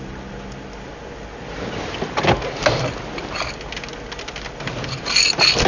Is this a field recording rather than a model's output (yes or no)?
yes